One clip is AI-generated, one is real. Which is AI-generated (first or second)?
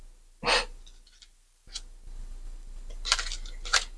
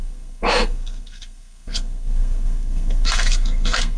second